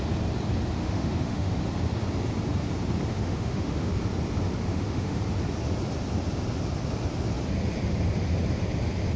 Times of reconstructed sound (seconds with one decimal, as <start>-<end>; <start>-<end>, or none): 0.8-1.6; 3.1-3.9; 4.7-5.2